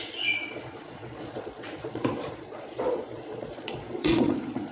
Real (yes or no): no